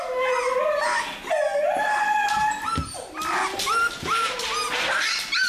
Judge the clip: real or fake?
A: real